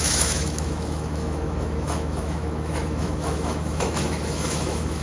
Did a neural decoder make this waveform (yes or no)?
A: yes